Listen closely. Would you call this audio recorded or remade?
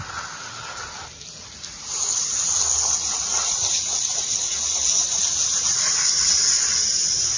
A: recorded